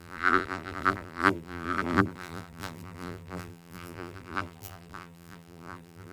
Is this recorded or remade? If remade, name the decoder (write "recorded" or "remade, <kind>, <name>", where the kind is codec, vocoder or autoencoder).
remade, vocoder, BigVGAN v2